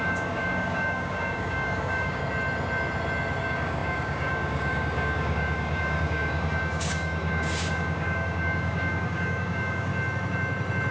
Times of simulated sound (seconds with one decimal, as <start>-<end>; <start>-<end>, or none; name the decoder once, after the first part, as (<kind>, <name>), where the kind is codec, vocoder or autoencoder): 0.0-2.2 (codec, DAC); 3.4-9.9